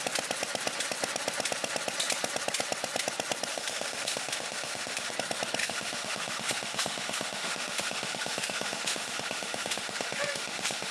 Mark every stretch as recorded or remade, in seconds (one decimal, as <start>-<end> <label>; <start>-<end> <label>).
0.0-3.5 recorded; 3.5-5.1 remade; 5.1-5.6 recorded; 5.6-10.9 remade